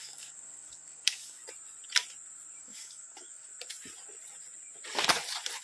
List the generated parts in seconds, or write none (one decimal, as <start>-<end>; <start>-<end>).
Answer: 0.0-1.4; 2.6-3.5